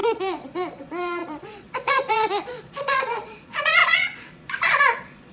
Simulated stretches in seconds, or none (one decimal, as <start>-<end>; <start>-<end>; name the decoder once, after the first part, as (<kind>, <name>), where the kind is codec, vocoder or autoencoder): 0.0-5.3 (vocoder, Vocos)